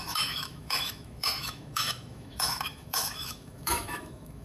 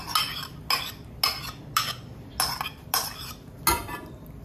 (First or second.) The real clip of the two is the second